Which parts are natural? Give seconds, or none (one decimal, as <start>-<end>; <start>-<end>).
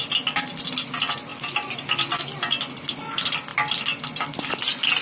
0.0-5.0